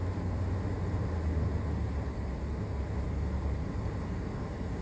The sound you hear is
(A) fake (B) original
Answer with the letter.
B